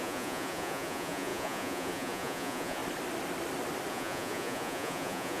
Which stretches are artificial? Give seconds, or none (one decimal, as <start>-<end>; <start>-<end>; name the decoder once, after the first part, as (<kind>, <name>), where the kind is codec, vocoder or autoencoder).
0.0-2.8 (vocoder, Vocos); 3.9-5.4